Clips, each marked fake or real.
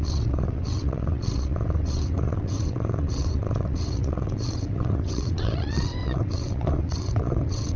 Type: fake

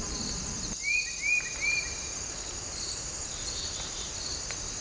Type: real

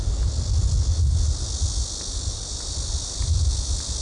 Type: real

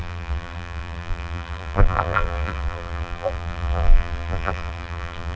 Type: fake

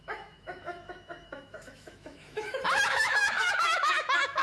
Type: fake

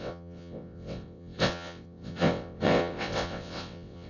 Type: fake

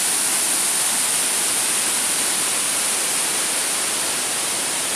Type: real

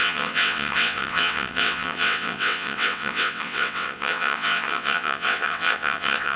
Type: fake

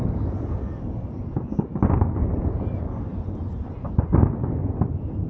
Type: fake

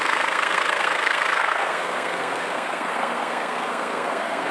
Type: fake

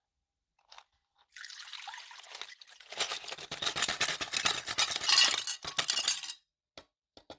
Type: real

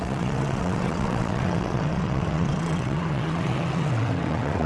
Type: fake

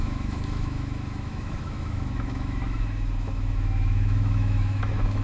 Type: fake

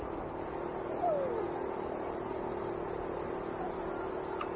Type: real